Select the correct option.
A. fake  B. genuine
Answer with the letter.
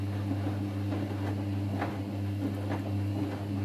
B